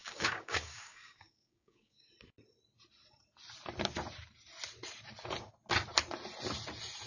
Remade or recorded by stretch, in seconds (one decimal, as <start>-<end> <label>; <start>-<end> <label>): 0.0-2.1 remade; 2.1-7.1 recorded